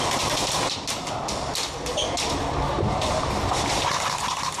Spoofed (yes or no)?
no